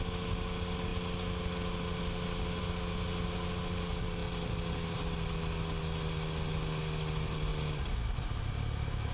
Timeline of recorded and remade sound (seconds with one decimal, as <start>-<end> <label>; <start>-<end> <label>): 0.0-9.1 recorded